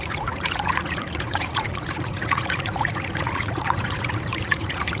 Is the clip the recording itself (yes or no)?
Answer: no